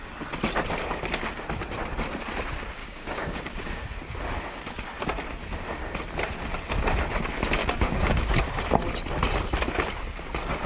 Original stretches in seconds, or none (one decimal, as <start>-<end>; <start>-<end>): 0.0-2.8; 3.8-7.6; 8.3-10.7